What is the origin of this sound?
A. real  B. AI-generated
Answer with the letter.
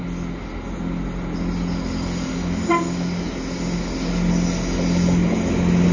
A